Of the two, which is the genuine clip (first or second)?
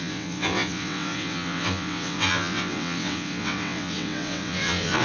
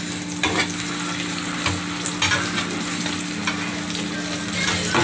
second